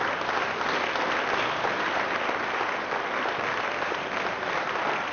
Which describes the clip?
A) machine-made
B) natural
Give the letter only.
B